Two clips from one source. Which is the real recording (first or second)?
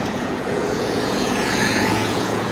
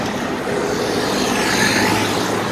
second